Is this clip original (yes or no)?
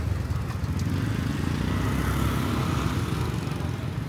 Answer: yes